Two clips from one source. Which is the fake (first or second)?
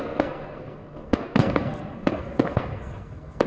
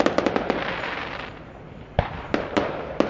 first